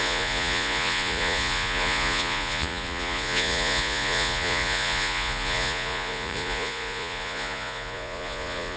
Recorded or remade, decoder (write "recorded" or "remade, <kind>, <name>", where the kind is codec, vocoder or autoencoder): remade, vocoder, Vocos